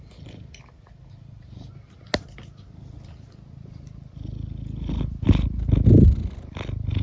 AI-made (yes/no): no